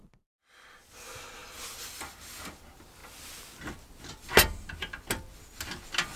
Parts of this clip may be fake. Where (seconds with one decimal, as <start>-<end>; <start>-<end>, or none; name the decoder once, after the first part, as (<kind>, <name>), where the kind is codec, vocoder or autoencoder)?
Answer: none